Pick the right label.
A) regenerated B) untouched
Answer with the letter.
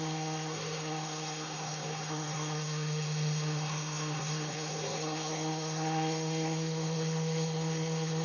A